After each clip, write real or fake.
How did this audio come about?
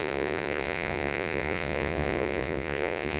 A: fake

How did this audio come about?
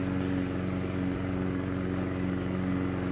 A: real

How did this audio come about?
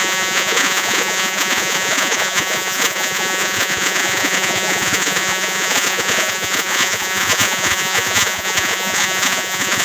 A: fake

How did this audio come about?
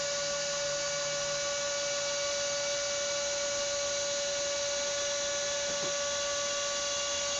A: real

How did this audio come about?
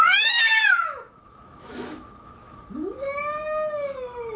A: fake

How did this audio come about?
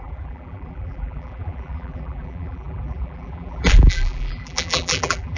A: fake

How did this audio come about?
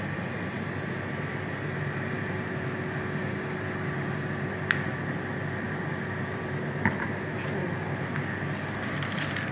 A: fake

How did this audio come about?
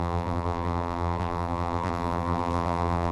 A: fake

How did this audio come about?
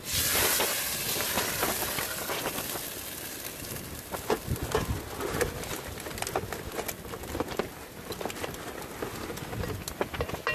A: real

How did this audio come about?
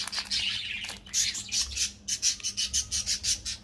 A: real